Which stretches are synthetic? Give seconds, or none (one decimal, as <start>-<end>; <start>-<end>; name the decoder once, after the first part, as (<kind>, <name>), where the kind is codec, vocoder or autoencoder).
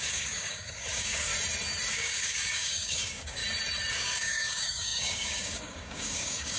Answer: 0.0-1.3 (codec, DAC); 1.9-3.4; 3.9-6.6